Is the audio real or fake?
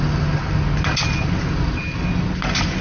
real